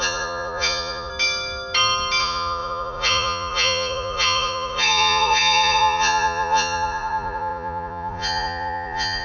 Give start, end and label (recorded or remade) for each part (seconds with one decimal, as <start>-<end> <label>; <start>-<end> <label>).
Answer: 0.0-1.1 remade; 1.1-2.2 recorded; 2.2-9.2 remade